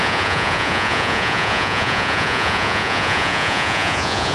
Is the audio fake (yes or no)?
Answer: yes